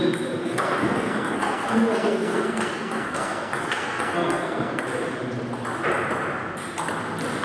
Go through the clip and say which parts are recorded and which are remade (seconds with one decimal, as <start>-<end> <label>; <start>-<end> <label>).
0.0-0.4 recorded; 0.4-4.8 remade; 4.8-7.4 recorded